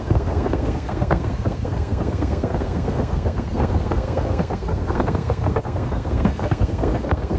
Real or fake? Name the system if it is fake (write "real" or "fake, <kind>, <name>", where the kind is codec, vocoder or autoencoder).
fake, codec, SNAC